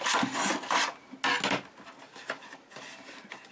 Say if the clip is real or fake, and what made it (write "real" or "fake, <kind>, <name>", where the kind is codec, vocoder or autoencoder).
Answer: real